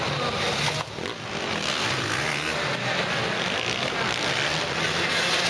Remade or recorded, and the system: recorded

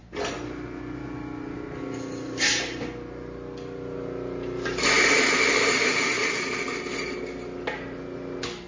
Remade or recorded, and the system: recorded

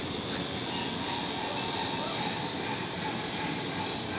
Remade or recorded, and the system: recorded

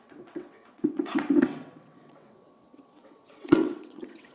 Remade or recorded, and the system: remade, vocoder, WaveNeXt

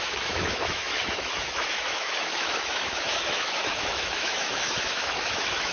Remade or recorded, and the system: remade, autoencoder, DAC-VAE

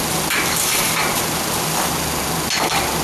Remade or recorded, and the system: recorded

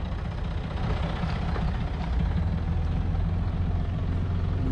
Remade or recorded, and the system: recorded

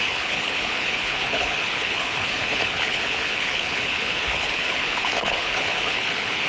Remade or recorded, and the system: remade, codec, HILCodec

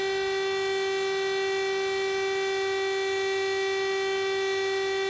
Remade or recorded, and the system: recorded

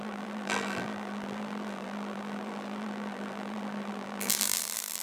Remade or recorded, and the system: remade, vocoder, BigVGAN v2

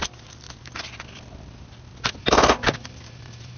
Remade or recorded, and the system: recorded